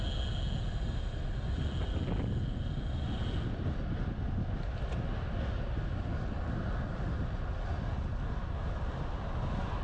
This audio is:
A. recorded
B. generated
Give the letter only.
A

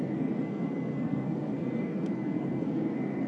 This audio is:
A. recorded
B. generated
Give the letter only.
B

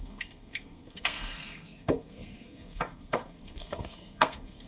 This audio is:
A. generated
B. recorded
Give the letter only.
A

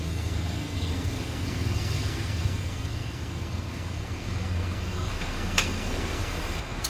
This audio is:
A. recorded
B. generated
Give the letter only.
B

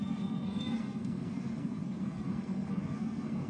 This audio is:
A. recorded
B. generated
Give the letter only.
B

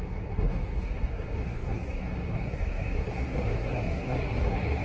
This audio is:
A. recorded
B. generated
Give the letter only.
B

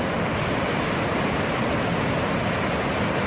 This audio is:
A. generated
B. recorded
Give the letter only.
B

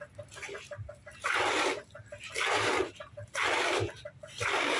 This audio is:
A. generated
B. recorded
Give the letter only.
B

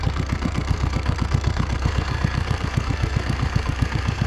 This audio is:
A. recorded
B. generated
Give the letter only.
B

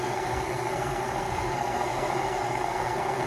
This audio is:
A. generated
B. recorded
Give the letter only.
A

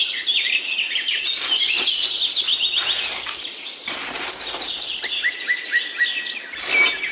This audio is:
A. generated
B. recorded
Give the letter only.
B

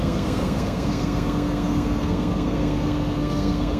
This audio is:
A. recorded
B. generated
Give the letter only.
B